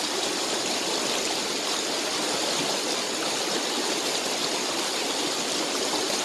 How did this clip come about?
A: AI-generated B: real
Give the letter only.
B